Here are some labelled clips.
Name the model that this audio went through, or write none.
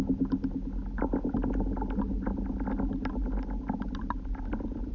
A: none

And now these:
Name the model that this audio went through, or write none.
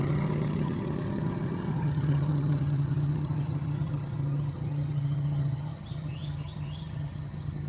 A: vocoder, HiFi-GAN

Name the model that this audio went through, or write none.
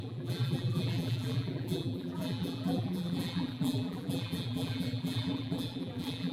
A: vocoder, BigVGAN v2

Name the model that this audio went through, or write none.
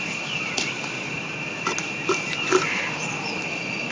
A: vocoder, BigVGAN v2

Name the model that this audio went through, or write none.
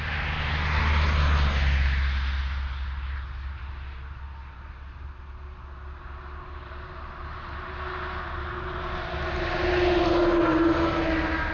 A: none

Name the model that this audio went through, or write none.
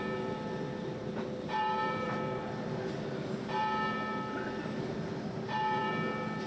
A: vocoder, BigVGAN v2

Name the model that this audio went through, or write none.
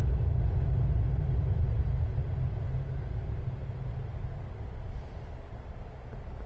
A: none